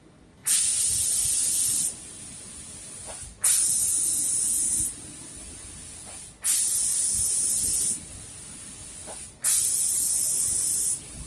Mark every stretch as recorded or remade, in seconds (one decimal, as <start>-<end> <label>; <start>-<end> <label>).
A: 0.0-9.4 recorded; 9.4-10.3 remade; 10.3-11.3 recorded